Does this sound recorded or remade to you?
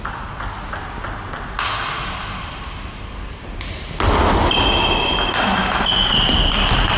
recorded